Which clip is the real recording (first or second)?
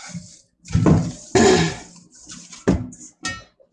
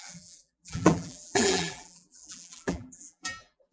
first